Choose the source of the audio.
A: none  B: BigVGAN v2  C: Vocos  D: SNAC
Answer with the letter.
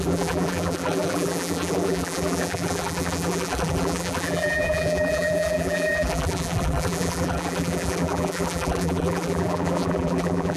B